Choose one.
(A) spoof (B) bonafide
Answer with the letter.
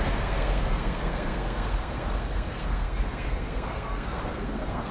A